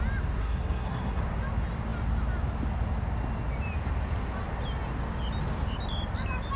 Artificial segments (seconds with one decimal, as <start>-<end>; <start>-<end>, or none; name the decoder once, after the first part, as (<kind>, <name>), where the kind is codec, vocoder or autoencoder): 0.4-1.2 (codec, SNAC)